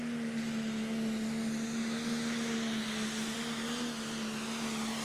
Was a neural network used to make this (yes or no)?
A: no